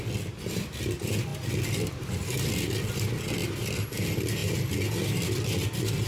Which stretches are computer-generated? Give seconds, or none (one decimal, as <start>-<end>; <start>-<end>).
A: 1.3-2.0; 3.4-3.9